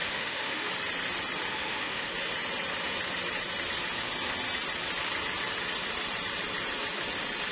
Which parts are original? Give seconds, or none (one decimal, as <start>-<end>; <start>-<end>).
0.7-1.5; 2.1-7.5